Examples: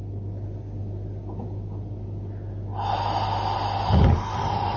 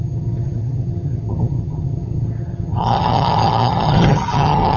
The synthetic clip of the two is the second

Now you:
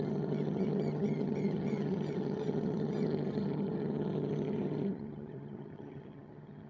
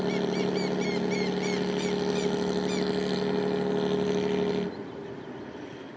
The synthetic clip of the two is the first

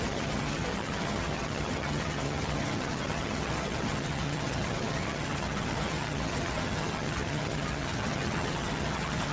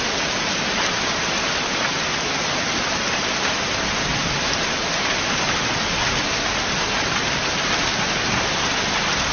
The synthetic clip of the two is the first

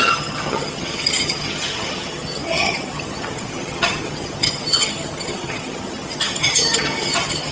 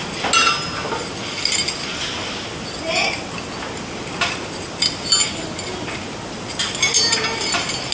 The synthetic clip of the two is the first